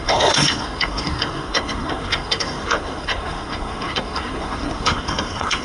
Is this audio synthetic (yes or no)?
yes